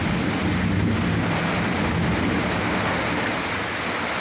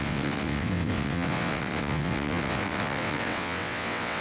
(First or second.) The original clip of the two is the first